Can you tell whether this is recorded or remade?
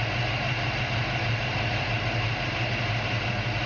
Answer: recorded